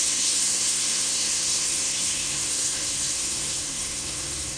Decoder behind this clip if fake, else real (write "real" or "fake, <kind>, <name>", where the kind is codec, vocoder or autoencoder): fake, codec, SNAC